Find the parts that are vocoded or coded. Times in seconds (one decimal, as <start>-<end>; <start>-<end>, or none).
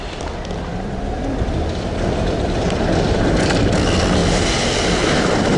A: 0.0-4.2; 5.1-5.6